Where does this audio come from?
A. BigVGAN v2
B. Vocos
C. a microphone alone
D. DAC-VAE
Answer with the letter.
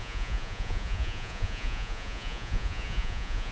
B